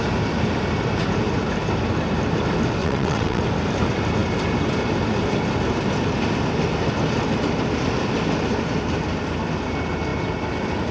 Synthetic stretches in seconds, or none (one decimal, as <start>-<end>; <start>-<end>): 2.8-3.4